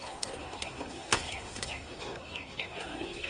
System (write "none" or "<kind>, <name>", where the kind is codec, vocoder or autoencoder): codec, SNAC